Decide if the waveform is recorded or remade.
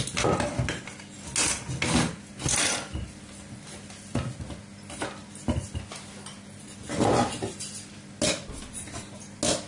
recorded